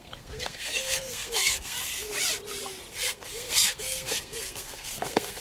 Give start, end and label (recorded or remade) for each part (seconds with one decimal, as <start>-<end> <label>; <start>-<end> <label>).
0.0-2.1 remade; 2.1-2.9 recorded; 2.9-5.4 remade

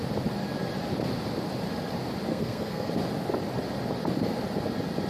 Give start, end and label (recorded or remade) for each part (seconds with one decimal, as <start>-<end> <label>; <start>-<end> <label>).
0.0-2.3 recorded; 2.3-2.9 remade; 2.9-5.1 recorded

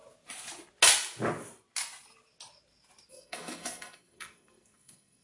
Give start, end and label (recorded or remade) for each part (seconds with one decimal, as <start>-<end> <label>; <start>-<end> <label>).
0.0-3.1 recorded; 3.1-5.2 remade

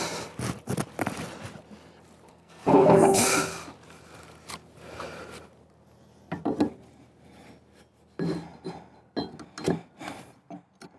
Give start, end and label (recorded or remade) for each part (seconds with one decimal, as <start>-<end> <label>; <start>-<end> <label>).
0.0-2.3 recorded; 2.3-3.3 remade; 3.3-11.0 recorded